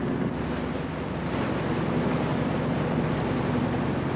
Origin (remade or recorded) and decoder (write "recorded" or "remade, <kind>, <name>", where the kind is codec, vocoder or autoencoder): recorded